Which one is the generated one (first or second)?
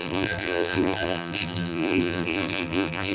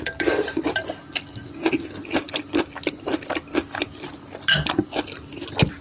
first